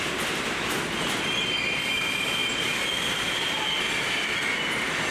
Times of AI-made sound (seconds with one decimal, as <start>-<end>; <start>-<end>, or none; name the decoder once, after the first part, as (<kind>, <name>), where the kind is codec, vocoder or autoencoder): none